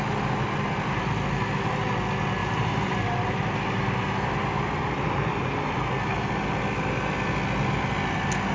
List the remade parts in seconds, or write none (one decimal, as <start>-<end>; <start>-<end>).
2.4-2.9